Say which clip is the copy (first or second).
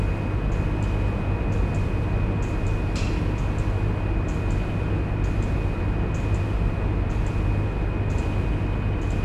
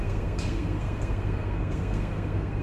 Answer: second